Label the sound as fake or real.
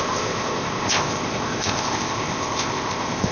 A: fake